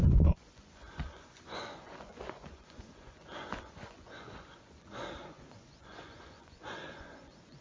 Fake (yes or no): yes